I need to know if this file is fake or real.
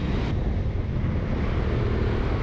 real